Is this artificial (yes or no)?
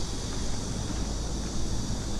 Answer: no